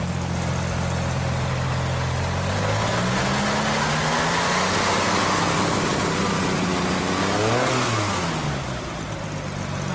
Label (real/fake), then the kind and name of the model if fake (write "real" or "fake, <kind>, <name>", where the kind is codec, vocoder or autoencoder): real